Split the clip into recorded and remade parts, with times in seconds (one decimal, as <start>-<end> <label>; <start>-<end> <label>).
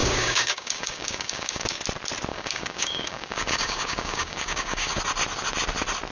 0.0-1.8 remade; 1.8-2.3 recorded; 2.3-5.0 remade; 5.0-6.1 recorded